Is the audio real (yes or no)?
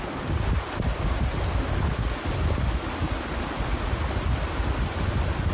yes